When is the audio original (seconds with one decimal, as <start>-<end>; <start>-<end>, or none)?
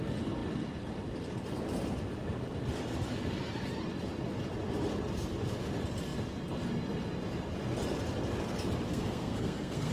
0.0-8.9